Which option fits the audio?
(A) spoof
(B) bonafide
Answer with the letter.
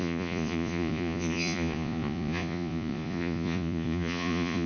A